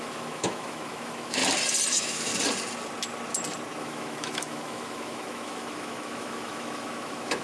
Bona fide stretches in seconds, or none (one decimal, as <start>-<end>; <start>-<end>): 1.4-1.9; 2.3-3.8